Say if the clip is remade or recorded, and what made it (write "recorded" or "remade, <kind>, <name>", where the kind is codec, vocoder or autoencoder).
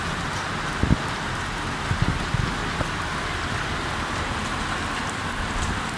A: recorded